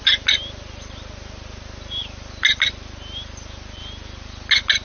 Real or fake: real